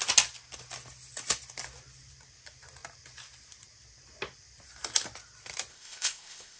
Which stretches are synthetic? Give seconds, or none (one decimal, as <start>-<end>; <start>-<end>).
5.7-6.6